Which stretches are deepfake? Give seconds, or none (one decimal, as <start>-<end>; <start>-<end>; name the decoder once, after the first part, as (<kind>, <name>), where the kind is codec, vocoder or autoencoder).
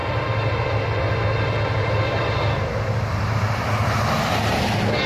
none